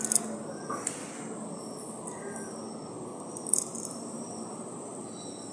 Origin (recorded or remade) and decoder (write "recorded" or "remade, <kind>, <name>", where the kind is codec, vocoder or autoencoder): recorded